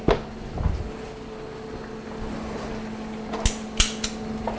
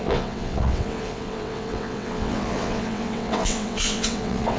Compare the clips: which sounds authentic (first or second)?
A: first